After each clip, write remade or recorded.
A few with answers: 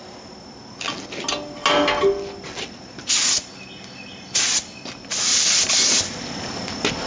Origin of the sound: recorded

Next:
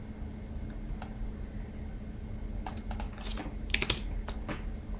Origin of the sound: recorded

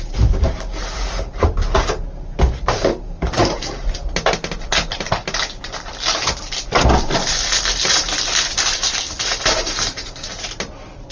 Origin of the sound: recorded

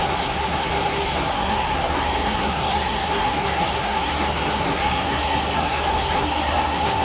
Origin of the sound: remade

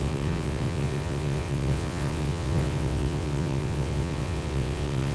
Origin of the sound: remade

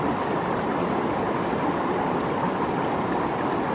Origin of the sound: recorded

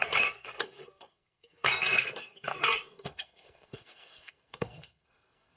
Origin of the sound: remade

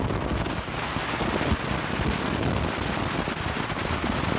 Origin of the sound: recorded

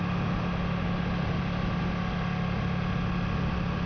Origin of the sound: recorded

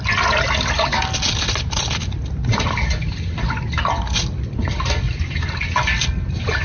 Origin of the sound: recorded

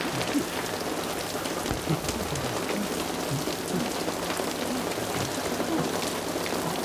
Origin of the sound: recorded